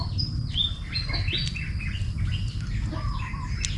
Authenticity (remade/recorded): recorded